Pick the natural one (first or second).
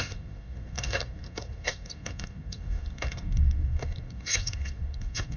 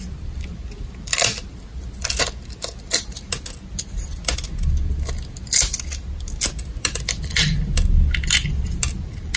second